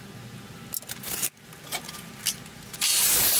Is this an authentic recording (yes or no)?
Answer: yes